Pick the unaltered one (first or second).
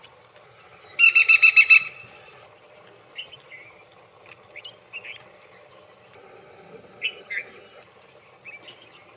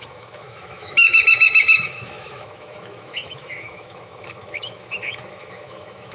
first